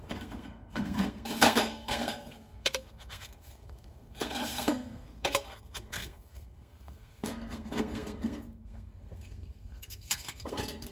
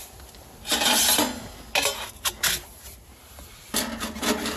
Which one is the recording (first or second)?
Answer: second